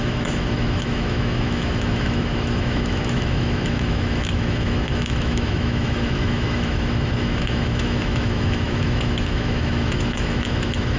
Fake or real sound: fake